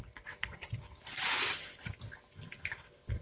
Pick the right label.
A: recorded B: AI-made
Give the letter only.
B